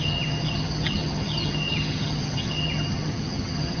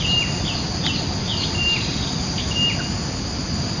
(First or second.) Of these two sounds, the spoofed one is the first